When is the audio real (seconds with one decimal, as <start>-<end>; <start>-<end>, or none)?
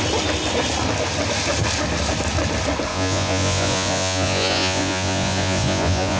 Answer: 0.0-2.9